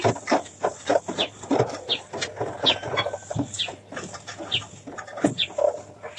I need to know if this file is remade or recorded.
recorded